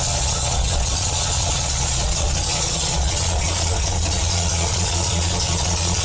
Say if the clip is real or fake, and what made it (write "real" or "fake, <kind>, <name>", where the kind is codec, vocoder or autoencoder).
fake, vocoder, Vocos